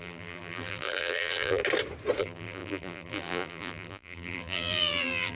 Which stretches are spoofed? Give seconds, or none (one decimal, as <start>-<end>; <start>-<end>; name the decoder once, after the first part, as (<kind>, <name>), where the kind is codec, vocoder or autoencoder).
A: 0.0-1.6 (vocoder, BigVGAN v2); 2.2-5.4